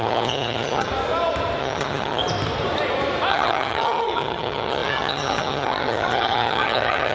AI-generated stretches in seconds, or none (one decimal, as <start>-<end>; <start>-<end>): 0.0-0.9; 1.6-2.2; 3.3-7.1